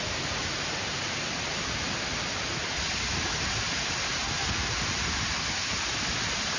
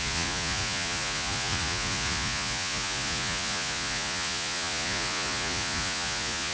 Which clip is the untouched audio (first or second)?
first